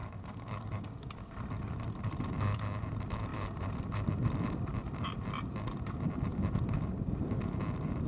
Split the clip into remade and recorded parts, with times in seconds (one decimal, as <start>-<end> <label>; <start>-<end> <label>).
0.0-1.1 remade; 1.1-8.1 recorded